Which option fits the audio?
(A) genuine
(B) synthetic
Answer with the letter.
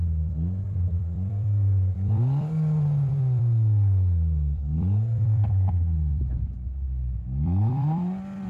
B